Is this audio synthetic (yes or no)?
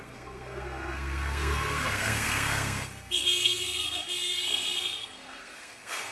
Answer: yes